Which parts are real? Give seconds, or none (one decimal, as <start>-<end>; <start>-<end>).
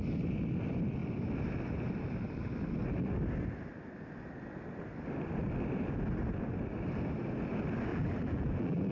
0.0-7.9